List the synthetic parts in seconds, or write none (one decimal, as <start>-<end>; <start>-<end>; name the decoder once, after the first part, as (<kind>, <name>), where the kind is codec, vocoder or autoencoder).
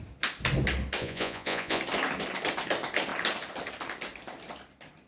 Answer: 1.0-1.8 (vocoder, Vocos)